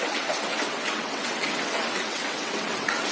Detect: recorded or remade remade